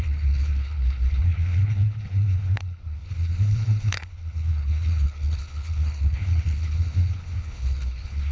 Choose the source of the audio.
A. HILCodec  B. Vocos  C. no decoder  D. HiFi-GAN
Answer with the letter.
A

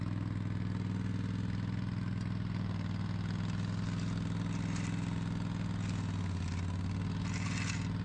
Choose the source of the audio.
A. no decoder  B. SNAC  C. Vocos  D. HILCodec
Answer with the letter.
A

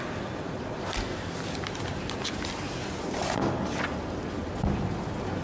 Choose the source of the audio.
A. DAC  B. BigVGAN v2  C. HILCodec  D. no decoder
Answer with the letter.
D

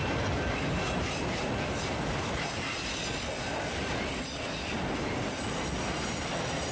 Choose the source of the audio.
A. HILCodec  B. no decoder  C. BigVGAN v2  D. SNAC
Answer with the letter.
B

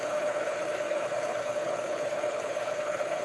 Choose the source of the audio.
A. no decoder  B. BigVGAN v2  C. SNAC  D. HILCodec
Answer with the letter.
D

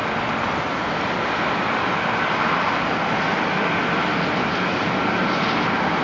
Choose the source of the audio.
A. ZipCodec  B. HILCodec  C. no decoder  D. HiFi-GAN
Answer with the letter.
C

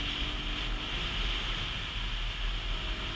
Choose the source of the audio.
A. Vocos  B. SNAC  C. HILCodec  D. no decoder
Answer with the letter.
D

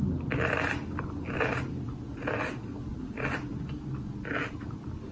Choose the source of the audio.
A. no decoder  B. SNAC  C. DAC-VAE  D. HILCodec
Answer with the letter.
A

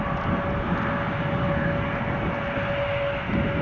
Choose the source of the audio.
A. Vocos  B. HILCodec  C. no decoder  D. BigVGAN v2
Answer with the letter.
C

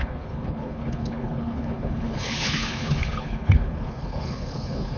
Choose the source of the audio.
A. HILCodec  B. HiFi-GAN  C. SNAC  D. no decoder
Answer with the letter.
A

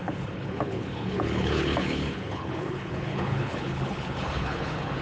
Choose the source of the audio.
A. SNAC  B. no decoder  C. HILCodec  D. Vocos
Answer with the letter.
C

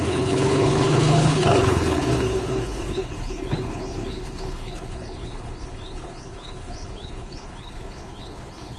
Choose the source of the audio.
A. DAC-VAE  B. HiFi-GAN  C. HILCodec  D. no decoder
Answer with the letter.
C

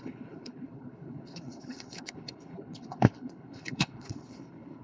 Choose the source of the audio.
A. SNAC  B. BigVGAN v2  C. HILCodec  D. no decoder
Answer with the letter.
C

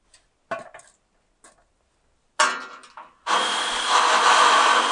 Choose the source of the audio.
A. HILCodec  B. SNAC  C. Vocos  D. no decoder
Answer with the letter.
D